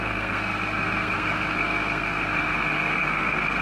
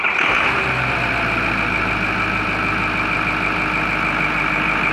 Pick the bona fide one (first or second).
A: second